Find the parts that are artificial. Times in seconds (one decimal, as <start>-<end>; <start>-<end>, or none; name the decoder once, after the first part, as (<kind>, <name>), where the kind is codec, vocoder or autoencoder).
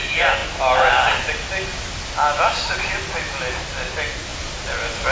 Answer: none